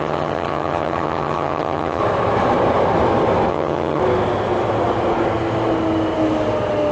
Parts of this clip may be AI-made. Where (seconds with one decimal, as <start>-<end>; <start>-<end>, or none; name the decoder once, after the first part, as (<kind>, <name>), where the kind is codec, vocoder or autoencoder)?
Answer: 0.0-2.0 (vocoder, HiFi-GAN); 3.5-4.0